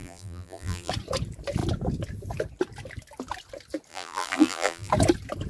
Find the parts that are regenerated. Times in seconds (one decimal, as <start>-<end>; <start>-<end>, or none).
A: 0.0-0.9; 3.9-4.9